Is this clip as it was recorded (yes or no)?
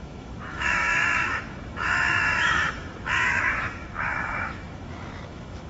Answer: no